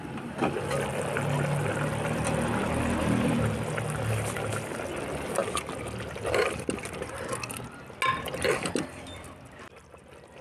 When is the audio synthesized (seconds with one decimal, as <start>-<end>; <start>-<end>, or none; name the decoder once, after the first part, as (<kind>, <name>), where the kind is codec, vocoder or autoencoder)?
none